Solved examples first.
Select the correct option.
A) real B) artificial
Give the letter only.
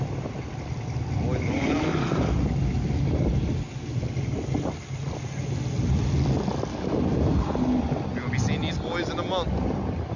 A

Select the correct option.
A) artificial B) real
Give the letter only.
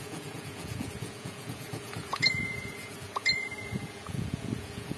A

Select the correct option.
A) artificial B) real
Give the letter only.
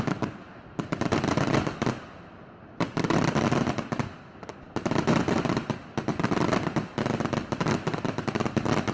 B